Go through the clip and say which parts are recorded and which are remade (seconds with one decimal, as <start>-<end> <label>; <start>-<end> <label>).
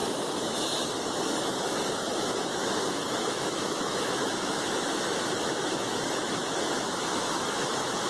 0.0-8.1 remade